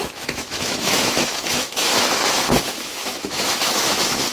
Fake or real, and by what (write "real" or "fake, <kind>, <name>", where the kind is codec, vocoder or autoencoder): fake, autoencoder, DAC-VAE